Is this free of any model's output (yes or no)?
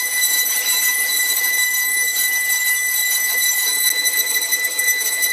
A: yes